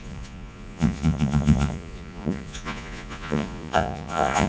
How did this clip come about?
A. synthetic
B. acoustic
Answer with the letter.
A